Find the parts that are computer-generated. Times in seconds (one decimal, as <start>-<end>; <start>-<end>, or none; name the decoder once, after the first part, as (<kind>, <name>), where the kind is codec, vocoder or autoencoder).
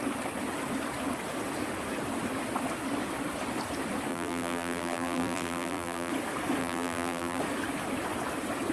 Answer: 4.1-6.1 (vocoder, BigVGAN v2); 6.6-7.4